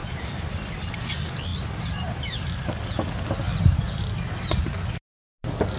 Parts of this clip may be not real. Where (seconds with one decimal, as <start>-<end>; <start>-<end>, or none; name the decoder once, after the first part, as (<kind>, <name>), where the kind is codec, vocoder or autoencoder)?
0.0-0.9 (vocoder, BigVGAN v2); 1.5-5.0